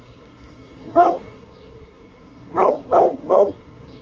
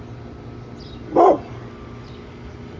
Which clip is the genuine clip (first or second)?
second